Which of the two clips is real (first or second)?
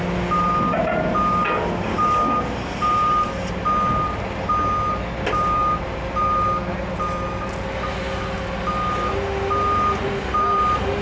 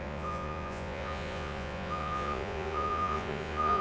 first